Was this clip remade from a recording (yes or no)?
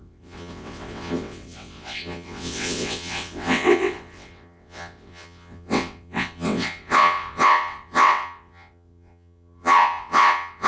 yes